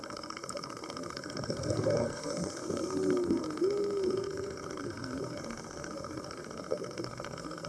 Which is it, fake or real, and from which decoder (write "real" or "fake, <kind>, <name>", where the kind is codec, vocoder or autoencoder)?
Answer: fake, codec, SNAC